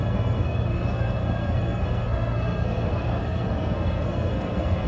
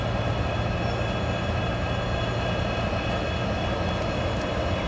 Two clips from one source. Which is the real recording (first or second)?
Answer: second